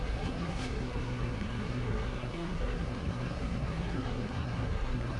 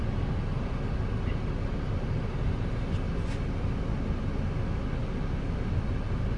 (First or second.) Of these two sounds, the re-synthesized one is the first